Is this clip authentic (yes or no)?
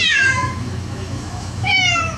no